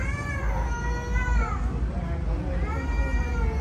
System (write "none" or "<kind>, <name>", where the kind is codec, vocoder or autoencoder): none